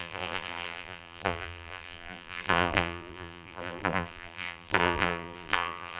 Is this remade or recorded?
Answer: remade